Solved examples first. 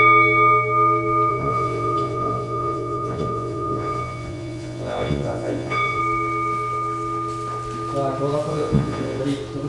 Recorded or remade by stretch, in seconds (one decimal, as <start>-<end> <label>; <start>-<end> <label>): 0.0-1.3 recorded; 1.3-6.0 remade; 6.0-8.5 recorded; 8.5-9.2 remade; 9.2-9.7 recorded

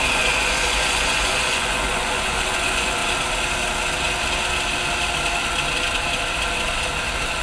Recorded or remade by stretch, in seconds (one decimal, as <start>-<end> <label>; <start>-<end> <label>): 0.0-3.0 remade; 3.0-7.4 recorded

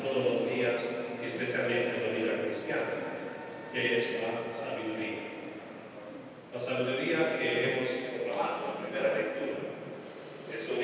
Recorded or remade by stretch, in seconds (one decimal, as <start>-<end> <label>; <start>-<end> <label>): 0.0-7.3 recorded; 7.3-9.0 remade; 9.0-10.8 recorded

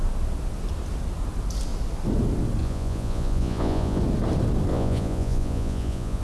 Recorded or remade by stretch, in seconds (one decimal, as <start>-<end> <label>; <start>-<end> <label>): 0.0-2.6 recorded; 2.6-4.0 remade; 4.0-4.7 recorded; 4.7-6.2 remade

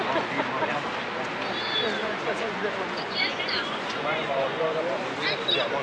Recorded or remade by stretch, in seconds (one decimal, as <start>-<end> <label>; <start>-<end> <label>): 0.0-2.0 recorded; 2.0-4.8 remade; 4.8-5.8 recorded

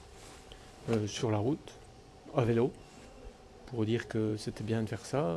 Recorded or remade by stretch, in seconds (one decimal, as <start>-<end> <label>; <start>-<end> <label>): 0.0-1.2 recorded; 1.2-3.4 remade; 3.4-5.4 recorded

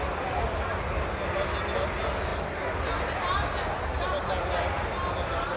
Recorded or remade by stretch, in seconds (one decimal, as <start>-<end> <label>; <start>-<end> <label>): 0.0-5.6 recorded